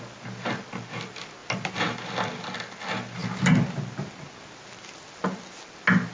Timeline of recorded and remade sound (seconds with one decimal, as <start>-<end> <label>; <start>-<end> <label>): 0.0-6.1 recorded